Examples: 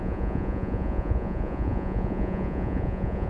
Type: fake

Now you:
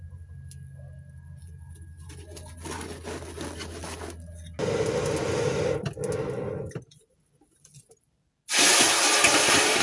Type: real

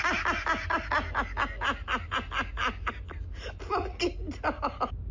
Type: real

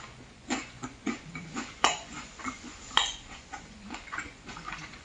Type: fake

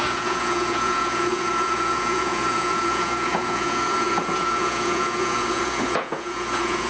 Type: fake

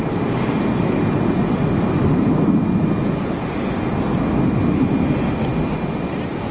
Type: real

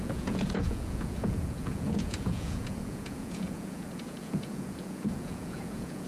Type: fake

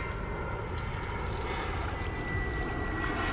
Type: real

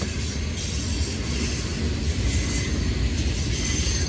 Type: real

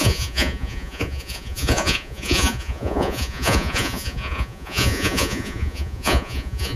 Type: fake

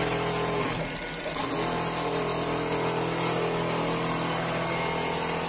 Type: real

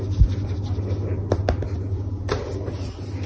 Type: real